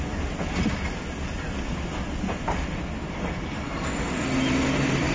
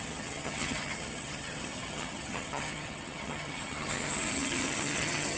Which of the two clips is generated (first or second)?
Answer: second